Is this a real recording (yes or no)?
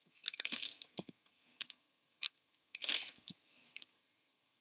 no